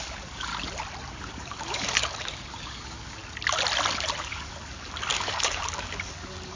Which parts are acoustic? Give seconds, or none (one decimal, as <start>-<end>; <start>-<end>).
0.5-1.1; 3.2-4.2